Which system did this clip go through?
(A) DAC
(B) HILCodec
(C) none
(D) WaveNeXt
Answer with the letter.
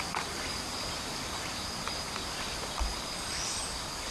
C